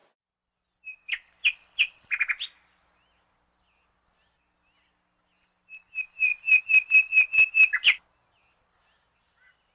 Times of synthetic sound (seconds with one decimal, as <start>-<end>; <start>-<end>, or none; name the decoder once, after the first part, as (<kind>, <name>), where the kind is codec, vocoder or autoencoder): none